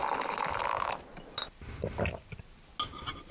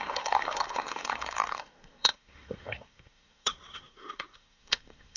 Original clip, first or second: first